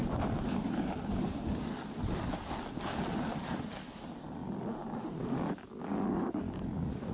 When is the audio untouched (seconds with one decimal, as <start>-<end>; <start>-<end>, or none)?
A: 0.0-7.1